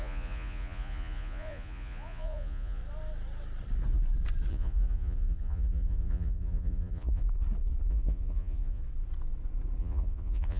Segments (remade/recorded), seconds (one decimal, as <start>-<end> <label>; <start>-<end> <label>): 0.0-2.8 remade; 2.8-4.5 recorded; 4.5-7.2 remade; 7.2-7.9 recorded; 7.9-8.8 remade; 8.8-9.8 recorded; 9.8-10.6 remade